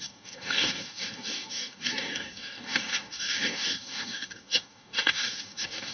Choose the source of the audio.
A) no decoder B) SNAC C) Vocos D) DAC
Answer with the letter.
D